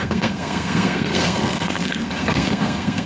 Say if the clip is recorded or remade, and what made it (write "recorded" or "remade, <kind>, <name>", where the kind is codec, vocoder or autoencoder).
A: remade, codec, SNAC